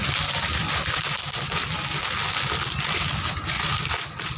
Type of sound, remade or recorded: recorded